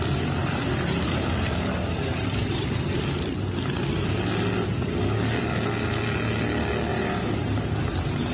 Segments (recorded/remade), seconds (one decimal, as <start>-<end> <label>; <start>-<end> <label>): 0.0-0.4 recorded; 0.4-3.1 remade; 3.1-6.9 recorded; 6.9-8.3 remade